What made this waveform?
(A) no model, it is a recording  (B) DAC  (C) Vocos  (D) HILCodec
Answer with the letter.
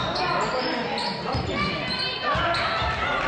A